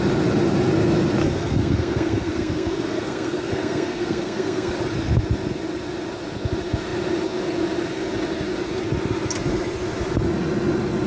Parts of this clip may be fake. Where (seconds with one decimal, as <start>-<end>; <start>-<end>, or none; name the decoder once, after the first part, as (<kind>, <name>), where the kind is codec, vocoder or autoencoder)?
1.2-4.7 (codec, SNAC)